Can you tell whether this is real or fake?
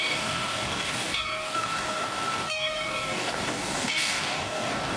fake